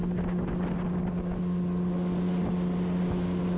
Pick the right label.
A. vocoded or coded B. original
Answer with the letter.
B